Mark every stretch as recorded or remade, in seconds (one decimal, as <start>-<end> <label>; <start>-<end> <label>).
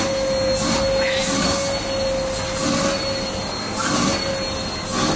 0.0-5.2 recorded